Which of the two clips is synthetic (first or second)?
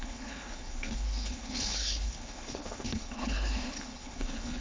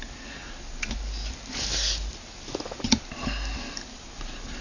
first